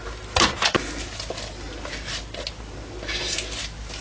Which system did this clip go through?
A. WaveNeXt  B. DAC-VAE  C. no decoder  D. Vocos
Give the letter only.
C